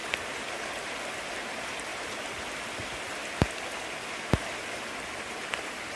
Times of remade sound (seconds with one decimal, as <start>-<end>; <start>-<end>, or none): 0.0-3.2; 5.3-6.0